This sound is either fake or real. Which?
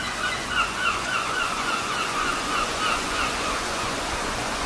fake